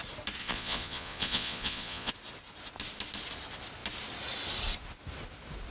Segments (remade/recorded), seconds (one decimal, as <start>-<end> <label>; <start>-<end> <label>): 0.0-0.4 recorded; 0.4-2.1 remade; 2.1-5.7 recorded